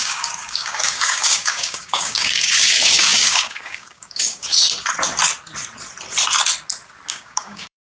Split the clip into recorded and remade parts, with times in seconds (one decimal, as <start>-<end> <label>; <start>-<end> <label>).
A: 0.0-4.5 remade; 4.5-7.1 recorded; 7.1-7.9 remade